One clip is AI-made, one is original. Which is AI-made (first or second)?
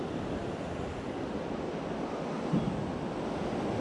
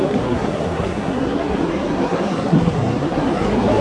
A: second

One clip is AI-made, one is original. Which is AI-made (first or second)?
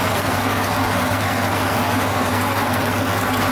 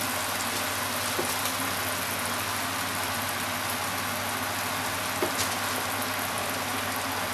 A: first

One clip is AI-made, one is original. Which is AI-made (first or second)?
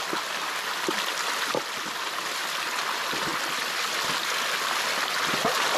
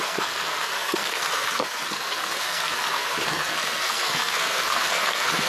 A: second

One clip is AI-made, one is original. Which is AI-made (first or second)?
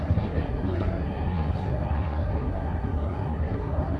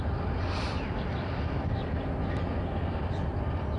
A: first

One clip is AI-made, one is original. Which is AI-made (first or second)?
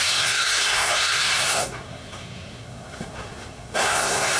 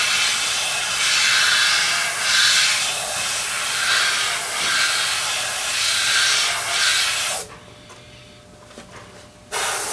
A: first